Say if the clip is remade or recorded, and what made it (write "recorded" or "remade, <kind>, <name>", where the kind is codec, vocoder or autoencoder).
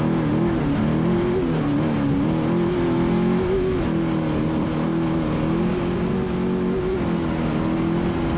recorded